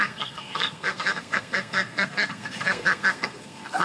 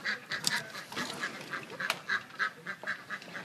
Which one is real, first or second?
second